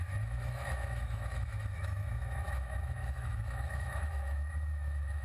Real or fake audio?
fake